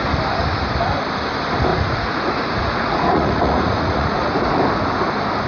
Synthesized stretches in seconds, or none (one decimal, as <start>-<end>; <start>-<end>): 1.7-4.6